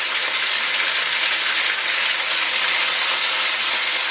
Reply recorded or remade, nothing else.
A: recorded